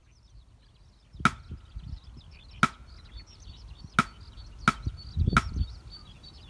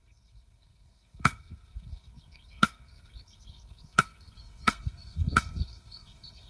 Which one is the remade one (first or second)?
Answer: second